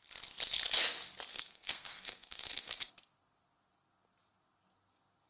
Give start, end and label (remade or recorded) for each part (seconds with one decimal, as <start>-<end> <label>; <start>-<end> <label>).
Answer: 0.0-1.3 recorded; 1.3-2.9 remade; 2.9-5.3 recorded